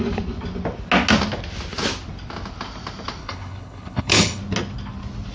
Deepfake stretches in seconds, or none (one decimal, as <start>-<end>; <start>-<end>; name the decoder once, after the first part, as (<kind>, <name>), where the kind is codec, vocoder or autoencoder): 3.2-4.4 (codec, HILCodec)